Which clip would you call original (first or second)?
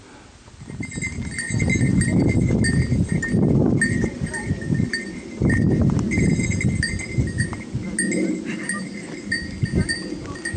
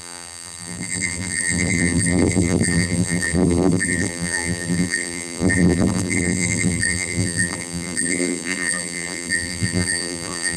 first